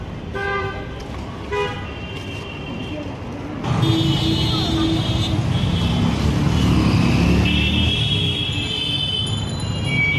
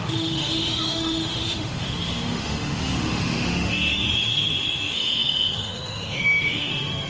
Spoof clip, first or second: second